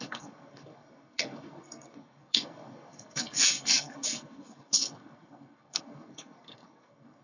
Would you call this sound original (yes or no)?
no